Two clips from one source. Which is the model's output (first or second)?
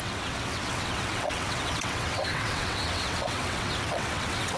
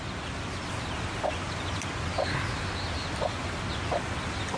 first